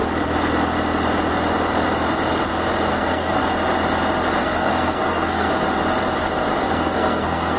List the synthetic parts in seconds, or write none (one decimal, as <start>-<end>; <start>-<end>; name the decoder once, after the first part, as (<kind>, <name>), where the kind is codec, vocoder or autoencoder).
2.9-3.4 (codec, SNAC); 4.4-5.5; 6.5-7.6